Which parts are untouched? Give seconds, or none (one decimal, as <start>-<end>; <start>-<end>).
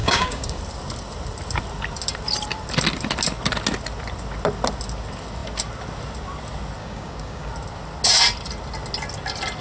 0.6-6.8; 7.5-9.6